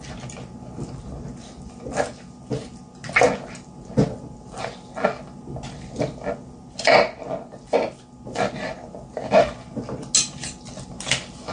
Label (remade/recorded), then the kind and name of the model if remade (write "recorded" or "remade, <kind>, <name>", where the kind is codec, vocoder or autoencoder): recorded